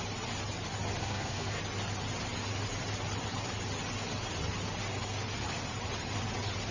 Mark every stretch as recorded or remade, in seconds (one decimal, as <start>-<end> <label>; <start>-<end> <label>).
0.0-1.0 recorded; 1.0-1.6 remade; 1.6-6.7 recorded